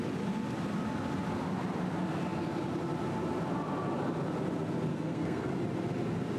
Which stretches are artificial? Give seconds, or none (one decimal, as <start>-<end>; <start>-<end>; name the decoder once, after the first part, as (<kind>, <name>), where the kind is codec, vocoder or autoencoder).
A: 4.9-5.5 (codec, SNAC)